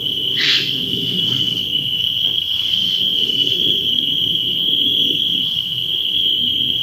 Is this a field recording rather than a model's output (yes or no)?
no